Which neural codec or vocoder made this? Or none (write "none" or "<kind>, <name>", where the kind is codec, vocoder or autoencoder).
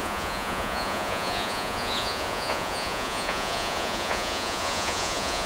vocoder, Vocos